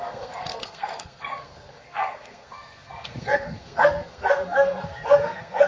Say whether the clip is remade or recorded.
remade